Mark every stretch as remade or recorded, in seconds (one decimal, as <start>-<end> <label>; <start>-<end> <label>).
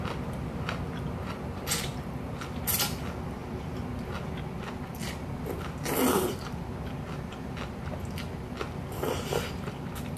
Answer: 0.0-10.2 recorded